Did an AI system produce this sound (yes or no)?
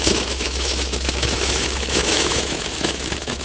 yes